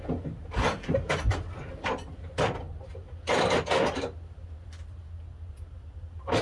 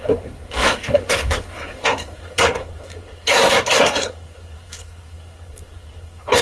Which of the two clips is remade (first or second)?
second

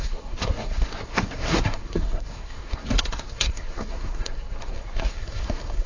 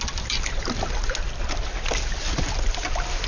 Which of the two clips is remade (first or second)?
first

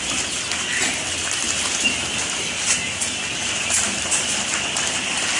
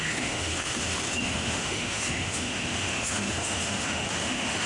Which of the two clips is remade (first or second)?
second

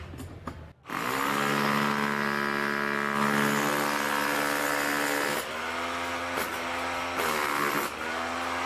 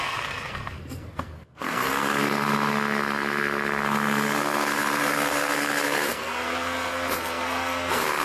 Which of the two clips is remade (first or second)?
second